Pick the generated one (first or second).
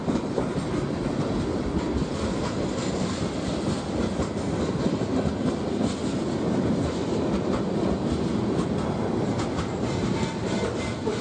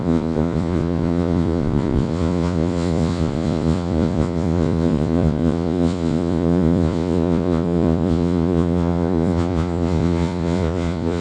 second